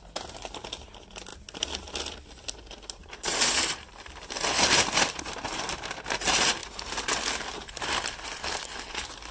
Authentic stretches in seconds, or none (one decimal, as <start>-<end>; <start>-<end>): 0.0-3.0; 4.2-9.3